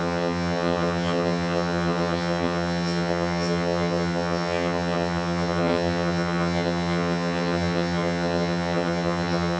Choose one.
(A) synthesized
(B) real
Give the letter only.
A